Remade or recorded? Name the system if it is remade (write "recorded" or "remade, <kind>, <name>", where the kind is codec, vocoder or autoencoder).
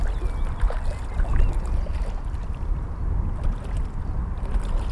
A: recorded